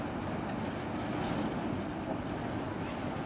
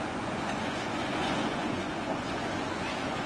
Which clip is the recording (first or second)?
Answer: first